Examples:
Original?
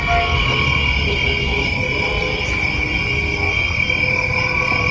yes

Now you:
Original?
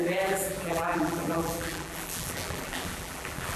no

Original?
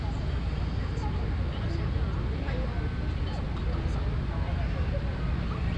yes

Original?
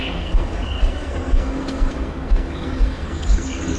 no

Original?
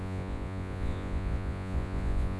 no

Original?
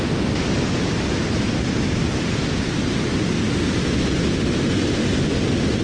yes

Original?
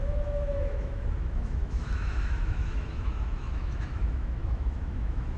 no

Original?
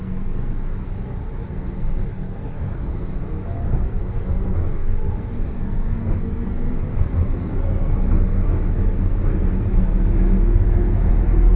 no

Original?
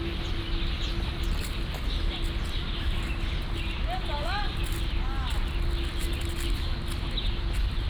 yes